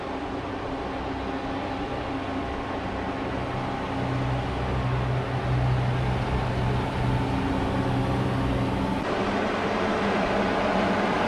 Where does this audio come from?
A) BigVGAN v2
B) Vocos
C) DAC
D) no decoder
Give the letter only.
D